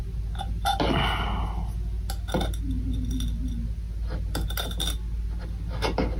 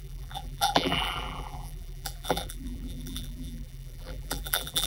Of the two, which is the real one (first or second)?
first